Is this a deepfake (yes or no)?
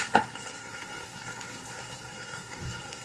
yes